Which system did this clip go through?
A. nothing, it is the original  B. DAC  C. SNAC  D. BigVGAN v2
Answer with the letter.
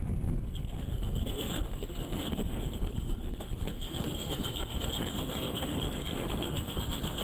C